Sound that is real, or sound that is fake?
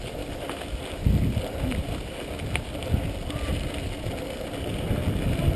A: real